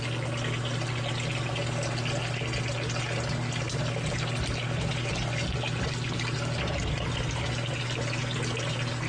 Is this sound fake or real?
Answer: real